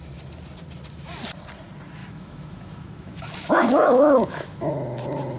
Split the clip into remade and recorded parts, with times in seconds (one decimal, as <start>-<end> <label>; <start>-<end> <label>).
0.0-2.0 recorded; 2.0-4.7 remade; 4.7-5.4 recorded